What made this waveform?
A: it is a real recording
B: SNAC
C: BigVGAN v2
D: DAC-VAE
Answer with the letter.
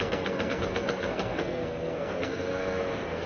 B